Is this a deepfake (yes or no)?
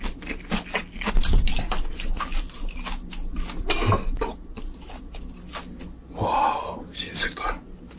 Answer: no